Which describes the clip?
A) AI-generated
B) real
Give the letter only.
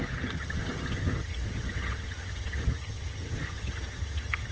A